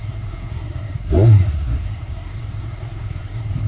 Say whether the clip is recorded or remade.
remade